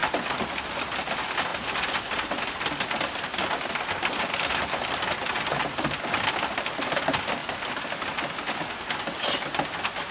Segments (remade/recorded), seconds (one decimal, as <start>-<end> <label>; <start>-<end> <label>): 0.0-10.1 recorded